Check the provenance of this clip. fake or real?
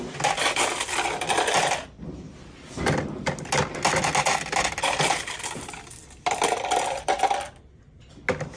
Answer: real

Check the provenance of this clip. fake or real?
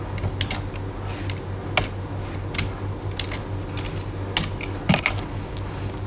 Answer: real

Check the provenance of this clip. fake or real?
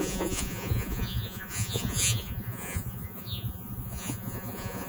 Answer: fake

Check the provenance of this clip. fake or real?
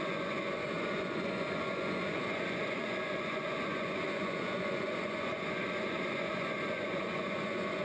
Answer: fake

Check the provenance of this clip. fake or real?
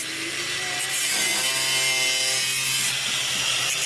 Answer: real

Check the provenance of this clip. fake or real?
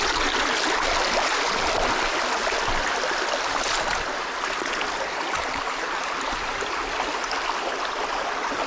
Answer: real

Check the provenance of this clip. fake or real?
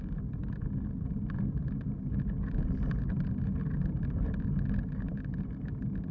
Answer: real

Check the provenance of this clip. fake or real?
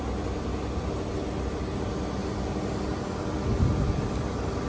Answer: real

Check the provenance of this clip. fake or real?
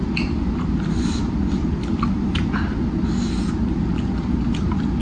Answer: real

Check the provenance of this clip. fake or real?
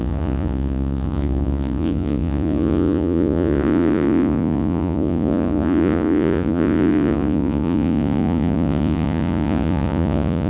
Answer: fake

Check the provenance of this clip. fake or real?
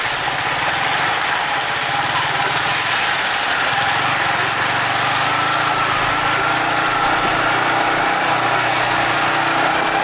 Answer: real